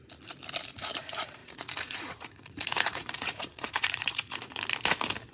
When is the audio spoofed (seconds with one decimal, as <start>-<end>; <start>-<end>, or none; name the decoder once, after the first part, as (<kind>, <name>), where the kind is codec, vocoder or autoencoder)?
1.4-4.6 (vocoder, Vocos)